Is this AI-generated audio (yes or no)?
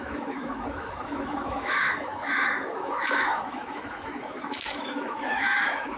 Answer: yes